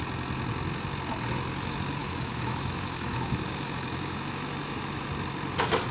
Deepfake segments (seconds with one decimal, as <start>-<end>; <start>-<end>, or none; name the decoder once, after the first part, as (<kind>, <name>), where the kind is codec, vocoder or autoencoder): 2.0-5.1 (autoencoder, DAC-VAE)